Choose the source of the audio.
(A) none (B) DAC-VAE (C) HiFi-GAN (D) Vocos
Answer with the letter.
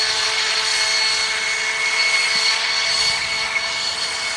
A